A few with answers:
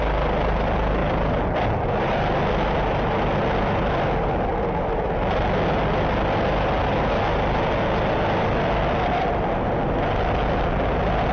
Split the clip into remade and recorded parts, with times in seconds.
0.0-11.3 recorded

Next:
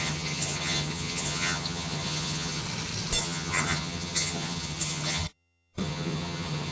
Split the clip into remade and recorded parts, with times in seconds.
0.0-2.6 remade; 2.6-3.2 recorded; 3.2-6.7 remade

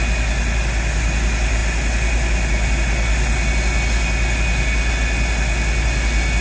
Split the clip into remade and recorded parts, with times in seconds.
0.0-6.4 recorded

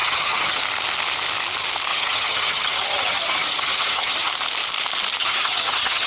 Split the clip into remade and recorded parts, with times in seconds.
0.0-0.6 remade; 0.6-1.9 recorded; 1.9-4.3 remade; 4.3-5.2 recorded; 5.2-6.1 remade

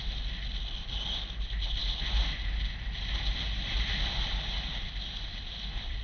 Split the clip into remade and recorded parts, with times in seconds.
0.0-6.0 recorded